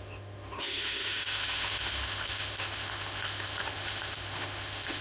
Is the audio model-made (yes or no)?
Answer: yes